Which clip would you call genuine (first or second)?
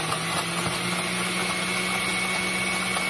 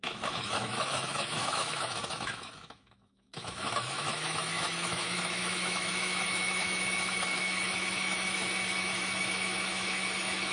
first